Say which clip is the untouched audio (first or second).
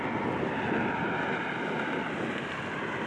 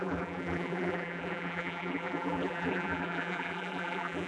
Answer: first